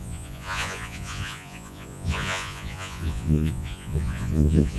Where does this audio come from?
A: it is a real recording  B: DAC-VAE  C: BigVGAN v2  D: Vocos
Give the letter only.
D